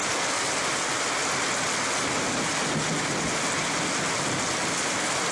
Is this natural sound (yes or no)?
yes